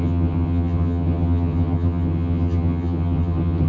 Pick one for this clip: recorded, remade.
remade